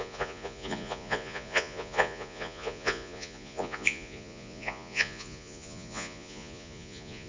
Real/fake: fake